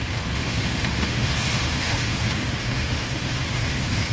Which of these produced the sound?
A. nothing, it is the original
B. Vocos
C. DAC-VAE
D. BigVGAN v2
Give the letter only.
C